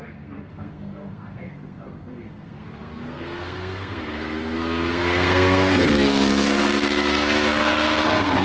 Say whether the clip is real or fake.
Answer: fake